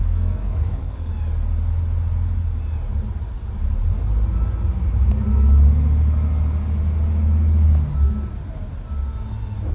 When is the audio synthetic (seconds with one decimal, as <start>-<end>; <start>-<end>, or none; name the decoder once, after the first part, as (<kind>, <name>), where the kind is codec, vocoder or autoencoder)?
0.0-1.1 (codec, SNAC)